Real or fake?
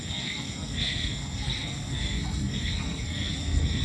fake